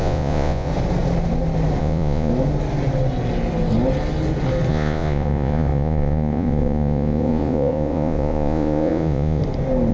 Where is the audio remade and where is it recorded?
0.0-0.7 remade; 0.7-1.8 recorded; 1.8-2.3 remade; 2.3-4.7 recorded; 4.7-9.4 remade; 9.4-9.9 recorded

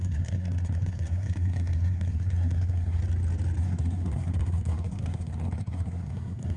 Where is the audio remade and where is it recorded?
0.0-3.0 remade; 3.0-3.6 recorded; 3.6-6.6 remade

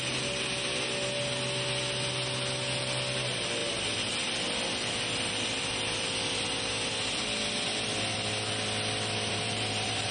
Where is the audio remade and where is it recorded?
0.0-9.3 recorded; 9.3-10.1 remade

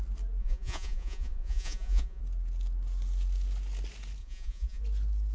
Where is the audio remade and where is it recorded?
0.0-0.4 recorded; 0.4-2.2 remade; 2.2-4.2 recorded; 4.2-4.8 remade; 4.8-5.3 recorded

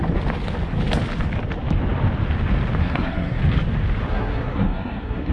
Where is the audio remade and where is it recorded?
0.0-2.8 recorded; 2.8-3.4 remade; 3.4-4.1 recorded; 4.1-5.3 remade